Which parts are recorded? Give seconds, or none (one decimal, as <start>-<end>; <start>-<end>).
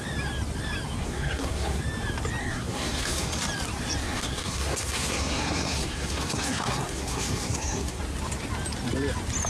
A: 0.0-1.0; 1.8-2.4; 3.3-4.0; 8.0-9.5